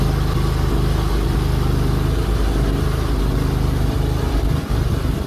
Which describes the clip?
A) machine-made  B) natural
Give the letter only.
B